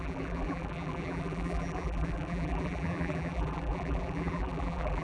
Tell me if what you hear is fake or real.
fake